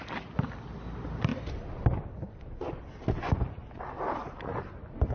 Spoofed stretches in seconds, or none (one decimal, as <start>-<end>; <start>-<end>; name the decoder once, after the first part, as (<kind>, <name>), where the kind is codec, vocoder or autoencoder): none